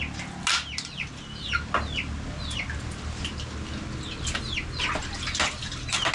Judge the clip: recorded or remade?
recorded